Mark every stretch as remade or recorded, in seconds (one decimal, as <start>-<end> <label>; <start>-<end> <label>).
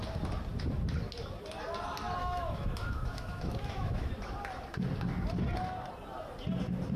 0.0-2.2 recorded; 2.2-4.1 remade; 4.1-7.0 recorded